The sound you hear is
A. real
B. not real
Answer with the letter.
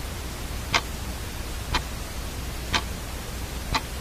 A